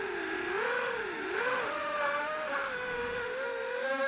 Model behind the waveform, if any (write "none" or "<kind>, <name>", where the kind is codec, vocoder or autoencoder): autoencoder, DAC-VAE